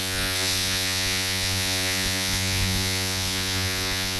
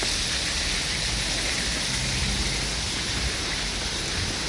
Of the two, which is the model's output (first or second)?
first